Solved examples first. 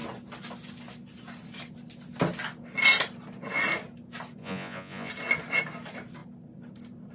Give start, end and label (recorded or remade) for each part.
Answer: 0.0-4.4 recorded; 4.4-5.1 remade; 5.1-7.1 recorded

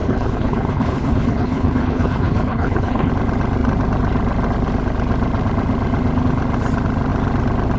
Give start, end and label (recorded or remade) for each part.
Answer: 0.0-3.1 remade; 3.1-7.8 recorded

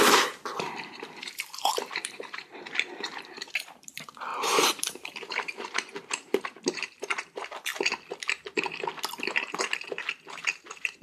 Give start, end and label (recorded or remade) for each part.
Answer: 0.0-7.7 remade; 7.7-8.4 recorded; 8.4-11.0 remade

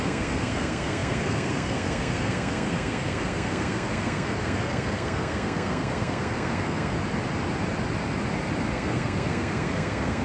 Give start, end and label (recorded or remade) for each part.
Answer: 0.0-6.9 remade; 6.9-8.7 recorded; 8.7-10.2 remade

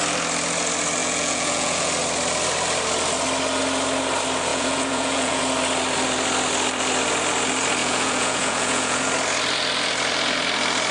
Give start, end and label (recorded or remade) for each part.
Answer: 0.0-1.0 recorded; 1.0-1.9 remade; 1.9-4.5 recorded; 4.5-5.4 remade; 5.4-7.8 recorded; 7.8-9.0 remade; 9.0-10.9 recorded

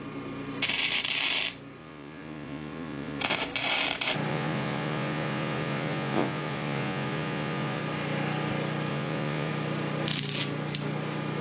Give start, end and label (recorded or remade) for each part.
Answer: 0.0-1.8 recorded; 1.8-3.2 remade; 3.2-4.3 recorded; 4.3-7.8 remade; 7.8-8.9 recorded; 8.9-9.5 remade; 9.5-11.4 recorded